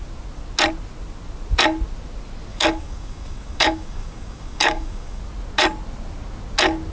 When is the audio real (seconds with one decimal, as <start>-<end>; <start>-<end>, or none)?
0.0-2.5; 5.2-6.9